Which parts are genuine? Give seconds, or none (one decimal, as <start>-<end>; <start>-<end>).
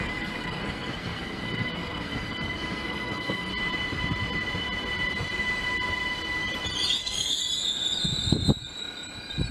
3.5-7.0; 7.4-9.5